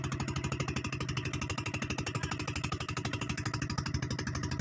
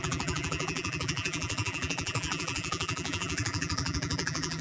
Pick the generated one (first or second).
second